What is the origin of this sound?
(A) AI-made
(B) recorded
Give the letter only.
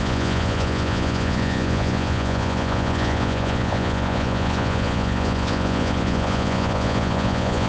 A